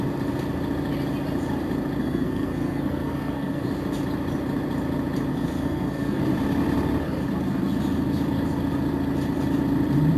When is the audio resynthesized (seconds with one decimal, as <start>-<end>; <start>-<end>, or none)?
2.0-3.7; 5.3-6.2